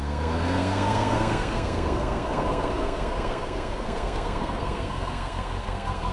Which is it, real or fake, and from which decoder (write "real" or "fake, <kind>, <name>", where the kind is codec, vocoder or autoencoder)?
fake, codec, SNAC